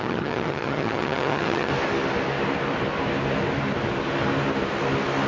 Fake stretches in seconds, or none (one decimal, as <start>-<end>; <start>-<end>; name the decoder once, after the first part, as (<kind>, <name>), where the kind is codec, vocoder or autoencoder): 0.0-1.7 (vocoder, HiFi-GAN)